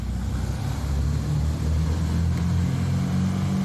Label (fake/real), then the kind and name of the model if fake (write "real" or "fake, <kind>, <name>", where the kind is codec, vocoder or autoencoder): real